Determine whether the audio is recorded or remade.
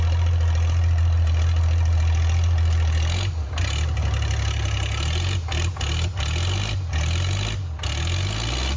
recorded